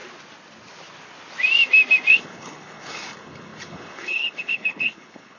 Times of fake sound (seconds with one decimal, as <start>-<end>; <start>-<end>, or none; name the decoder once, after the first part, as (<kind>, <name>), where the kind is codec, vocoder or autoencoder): 2.1-5.4 (codec, HILCodec)

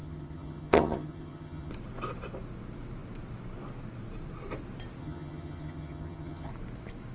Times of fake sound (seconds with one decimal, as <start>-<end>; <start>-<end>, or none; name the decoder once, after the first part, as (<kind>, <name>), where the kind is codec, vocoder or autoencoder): 0.0-1.7 (vocoder, HiFi-GAN); 5.0-6.5

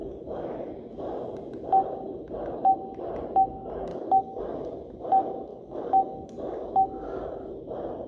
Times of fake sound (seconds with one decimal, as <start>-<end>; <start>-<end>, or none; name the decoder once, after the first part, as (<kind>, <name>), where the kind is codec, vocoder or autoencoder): 0.0-0.7 (codec, DAC); 3.9-4.4; 5.5-7.5

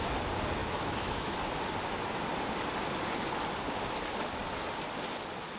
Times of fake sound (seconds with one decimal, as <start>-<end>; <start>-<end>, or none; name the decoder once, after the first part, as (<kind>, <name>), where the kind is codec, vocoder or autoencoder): 0.6-1.4 (autoencoder, DAC-VAE)

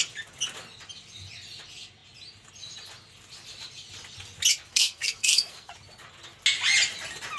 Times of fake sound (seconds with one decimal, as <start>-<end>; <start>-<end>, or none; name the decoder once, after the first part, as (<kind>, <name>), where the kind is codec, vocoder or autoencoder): 4.7-5.7 (codec, SNAC)

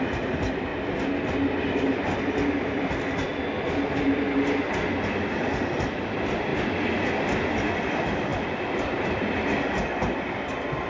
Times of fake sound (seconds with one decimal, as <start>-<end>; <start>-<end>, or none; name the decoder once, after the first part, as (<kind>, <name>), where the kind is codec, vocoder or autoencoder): 0.0-0.7 (vocoder, BigVGAN v2); 1.6-3.3; 5.3-6.5; 7.1-10.9

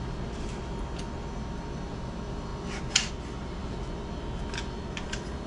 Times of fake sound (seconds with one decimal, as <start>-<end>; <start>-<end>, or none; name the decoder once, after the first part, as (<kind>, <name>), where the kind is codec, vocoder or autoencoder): none

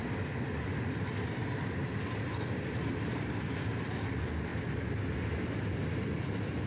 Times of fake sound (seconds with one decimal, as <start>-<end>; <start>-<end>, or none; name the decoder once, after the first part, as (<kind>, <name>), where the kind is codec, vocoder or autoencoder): none